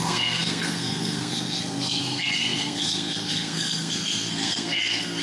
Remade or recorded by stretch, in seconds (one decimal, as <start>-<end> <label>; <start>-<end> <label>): 0.0-5.2 remade